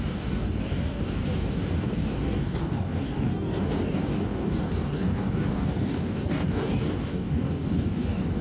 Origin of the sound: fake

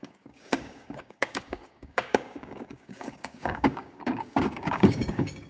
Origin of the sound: fake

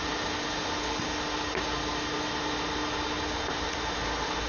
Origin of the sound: real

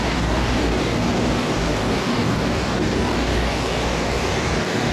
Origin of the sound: fake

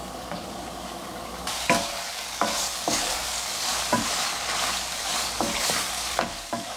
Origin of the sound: fake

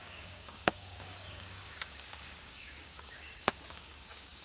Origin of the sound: fake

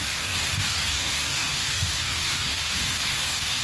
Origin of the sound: fake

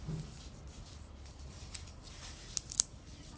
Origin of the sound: real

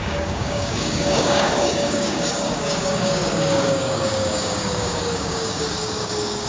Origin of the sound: fake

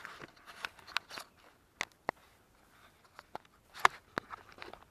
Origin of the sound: real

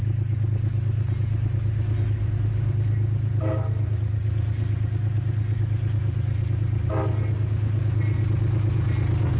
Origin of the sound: real